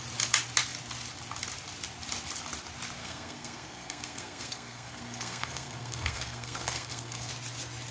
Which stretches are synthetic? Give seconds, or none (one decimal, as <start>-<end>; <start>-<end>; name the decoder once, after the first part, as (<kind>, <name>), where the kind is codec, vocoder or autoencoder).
3.0-7.3 (codec, SNAC)